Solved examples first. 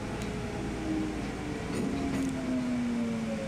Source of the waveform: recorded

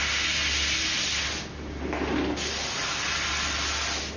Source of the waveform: recorded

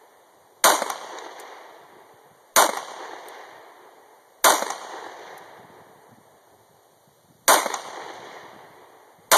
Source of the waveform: recorded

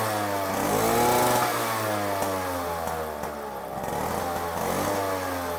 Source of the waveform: recorded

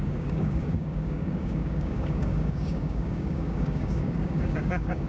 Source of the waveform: remade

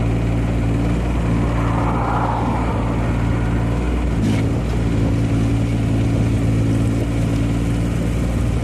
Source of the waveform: recorded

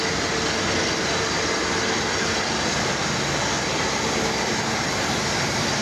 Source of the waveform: recorded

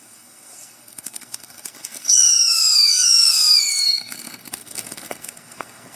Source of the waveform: remade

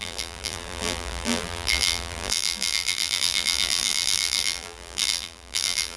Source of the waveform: remade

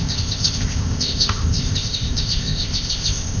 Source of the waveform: remade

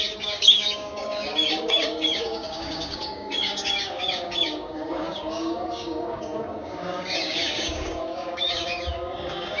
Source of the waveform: remade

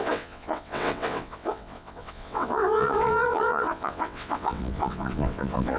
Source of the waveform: remade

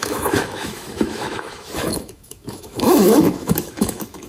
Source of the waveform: remade